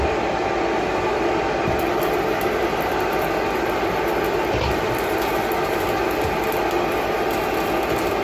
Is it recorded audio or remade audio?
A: recorded